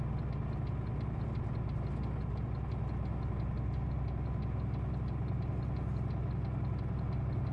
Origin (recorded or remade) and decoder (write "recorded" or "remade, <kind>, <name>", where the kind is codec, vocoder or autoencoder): recorded